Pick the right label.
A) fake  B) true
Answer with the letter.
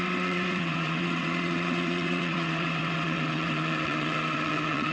A